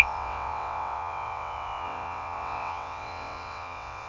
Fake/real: fake